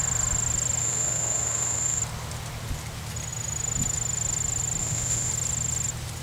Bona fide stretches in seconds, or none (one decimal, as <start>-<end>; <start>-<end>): 0.0-0.8; 2.0-4.8; 5.3-6.2